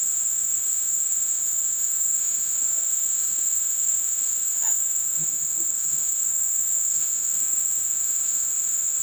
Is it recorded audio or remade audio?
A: remade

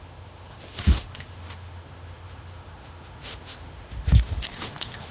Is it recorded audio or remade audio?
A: remade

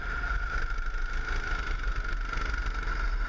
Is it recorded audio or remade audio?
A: recorded